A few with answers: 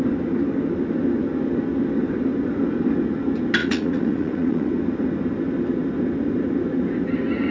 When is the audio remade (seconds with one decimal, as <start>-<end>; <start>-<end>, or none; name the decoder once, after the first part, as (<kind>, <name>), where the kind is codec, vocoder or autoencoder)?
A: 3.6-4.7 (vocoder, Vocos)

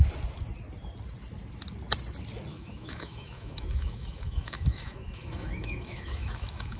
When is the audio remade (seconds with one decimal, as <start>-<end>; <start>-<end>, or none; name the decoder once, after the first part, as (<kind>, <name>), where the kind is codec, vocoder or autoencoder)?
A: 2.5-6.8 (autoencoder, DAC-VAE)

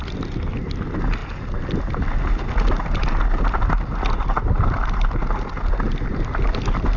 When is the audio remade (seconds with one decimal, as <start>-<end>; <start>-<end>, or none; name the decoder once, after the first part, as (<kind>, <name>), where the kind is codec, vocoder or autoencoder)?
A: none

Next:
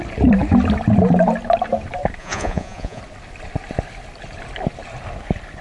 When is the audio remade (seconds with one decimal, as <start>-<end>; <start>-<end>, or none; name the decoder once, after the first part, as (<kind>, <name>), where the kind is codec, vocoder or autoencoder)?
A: 2.2-3.0 (vocoder, Vocos)

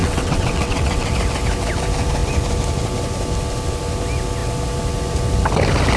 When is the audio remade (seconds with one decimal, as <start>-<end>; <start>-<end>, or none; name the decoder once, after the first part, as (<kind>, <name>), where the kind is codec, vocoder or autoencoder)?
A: 0.0-1.1 (vocoder, WaveNeXt)

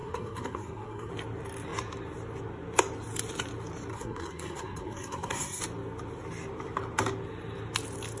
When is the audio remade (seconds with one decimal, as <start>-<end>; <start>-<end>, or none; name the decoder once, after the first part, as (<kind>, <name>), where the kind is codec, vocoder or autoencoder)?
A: 0.0-1.1 (codec, SNAC); 3.9-5.6